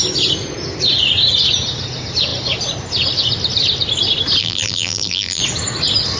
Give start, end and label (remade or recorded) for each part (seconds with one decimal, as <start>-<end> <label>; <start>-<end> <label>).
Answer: 0.0-4.4 recorded; 4.4-5.4 remade; 5.4-6.2 recorded